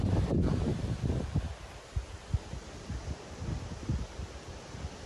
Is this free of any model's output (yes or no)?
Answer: yes